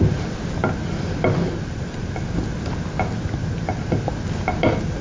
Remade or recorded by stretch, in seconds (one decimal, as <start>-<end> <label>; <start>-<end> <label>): 0.0-5.0 recorded